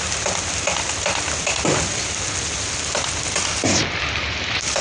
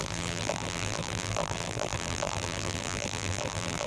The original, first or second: first